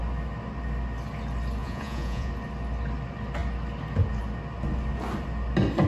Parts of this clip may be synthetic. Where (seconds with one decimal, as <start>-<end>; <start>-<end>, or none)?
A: 1.6-2.3